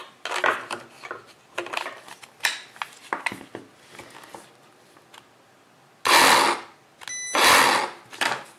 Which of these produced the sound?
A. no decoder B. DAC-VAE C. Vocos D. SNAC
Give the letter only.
A